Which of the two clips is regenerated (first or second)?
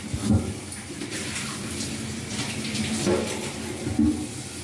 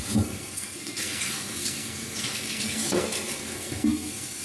second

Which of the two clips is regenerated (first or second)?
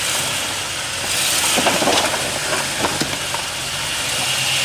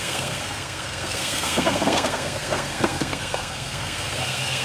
second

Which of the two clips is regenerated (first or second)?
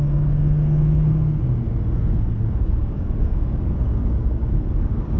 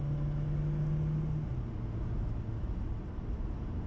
first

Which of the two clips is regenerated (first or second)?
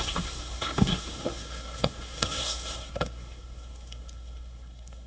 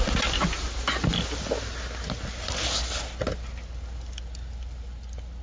first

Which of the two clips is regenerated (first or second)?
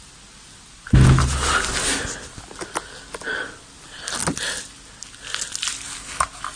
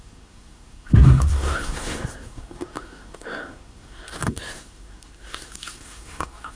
second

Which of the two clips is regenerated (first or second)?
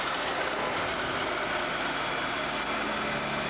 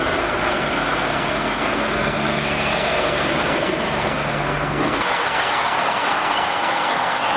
second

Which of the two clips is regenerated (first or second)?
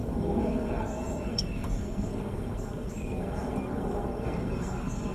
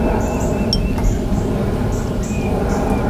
first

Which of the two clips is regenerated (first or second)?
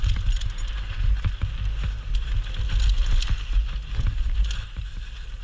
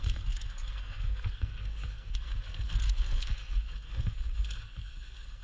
second